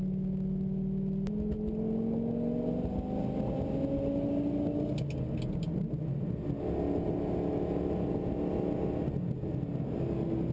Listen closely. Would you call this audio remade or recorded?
recorded